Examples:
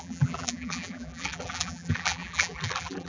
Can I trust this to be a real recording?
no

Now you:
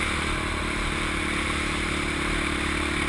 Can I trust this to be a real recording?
no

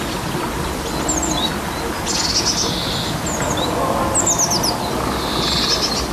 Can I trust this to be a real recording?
yes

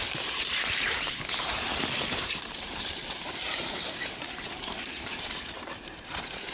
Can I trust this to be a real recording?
no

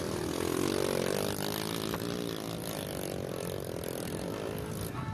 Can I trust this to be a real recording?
yes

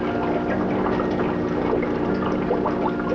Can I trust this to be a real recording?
yes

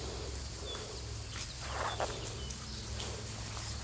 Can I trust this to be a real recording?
yes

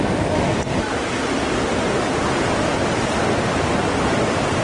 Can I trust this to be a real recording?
no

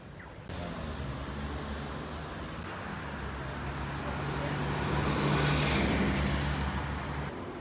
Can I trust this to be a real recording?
yes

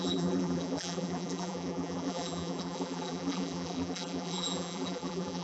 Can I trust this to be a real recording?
no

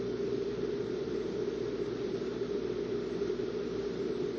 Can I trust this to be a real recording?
yes